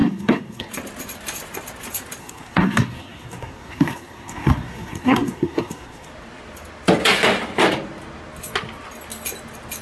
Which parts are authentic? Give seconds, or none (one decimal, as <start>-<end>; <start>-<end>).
0.7-2.2; 6.1-9.8